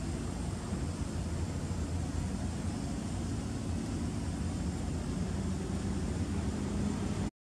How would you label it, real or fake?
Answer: real